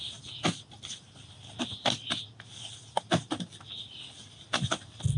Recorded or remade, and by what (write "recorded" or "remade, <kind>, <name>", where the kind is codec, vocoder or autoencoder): recorded